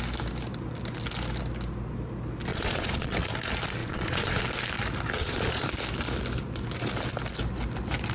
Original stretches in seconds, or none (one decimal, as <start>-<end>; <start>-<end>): 0.0-2.5; 3.3-3.8; 4.4-5.2; 5.7-8.1